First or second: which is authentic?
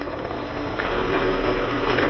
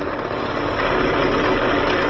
second